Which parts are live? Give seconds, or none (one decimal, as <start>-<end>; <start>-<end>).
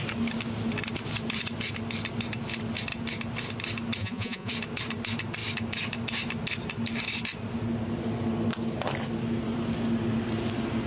0.0-4.0; 4.5-10.9